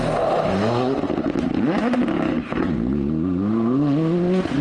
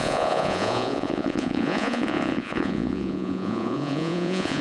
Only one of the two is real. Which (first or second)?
first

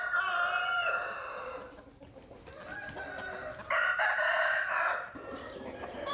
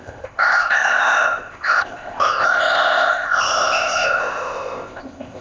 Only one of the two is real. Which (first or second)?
first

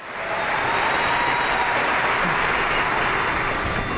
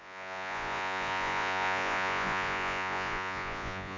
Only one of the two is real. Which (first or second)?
first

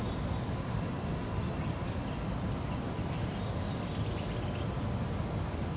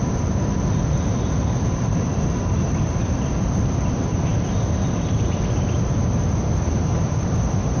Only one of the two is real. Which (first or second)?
first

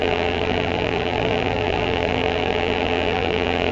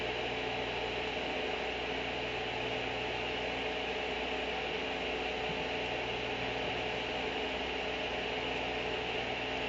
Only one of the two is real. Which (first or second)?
second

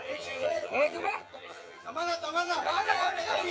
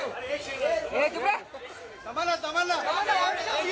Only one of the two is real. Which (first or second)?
second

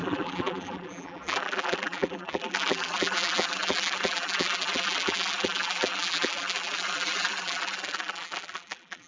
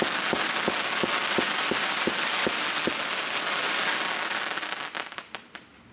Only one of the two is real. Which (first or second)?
second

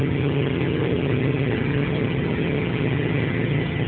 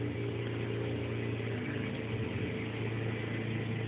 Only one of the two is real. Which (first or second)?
second